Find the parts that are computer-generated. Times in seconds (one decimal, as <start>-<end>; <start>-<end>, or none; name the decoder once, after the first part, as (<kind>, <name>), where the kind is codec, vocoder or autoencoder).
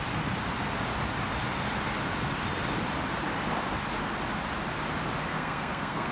5.3-6.1 (codec, SNAC)